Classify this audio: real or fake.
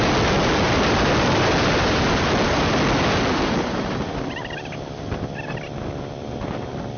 real